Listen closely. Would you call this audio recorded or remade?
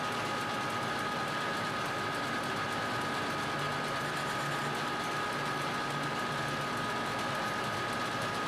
recorded